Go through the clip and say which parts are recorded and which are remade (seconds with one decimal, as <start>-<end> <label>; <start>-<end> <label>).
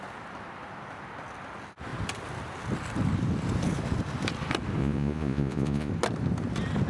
0.0-4.8 recorded; 4.8-5.9 remade; 5.9-6.9 recorded